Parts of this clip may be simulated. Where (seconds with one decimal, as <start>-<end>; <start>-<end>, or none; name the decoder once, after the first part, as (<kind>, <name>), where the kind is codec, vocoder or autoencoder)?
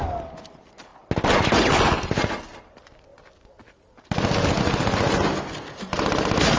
none